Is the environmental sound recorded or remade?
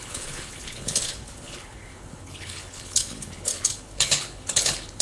remade